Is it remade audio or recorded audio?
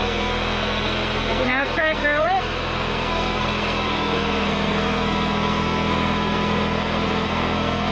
remade